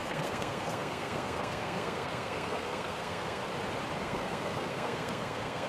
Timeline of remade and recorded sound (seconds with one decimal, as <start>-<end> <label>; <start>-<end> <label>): 0.0-3.4 remade; 3.4-4.0 recorded; 4.0-5.7 remade